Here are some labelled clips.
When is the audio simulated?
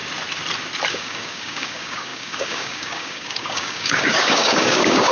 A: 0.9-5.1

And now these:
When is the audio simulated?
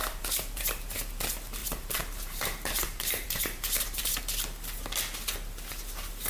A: 0.0-1.0; 1.6-4.2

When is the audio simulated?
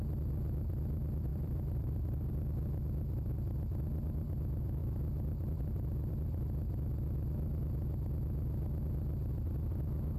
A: 1.3-2.3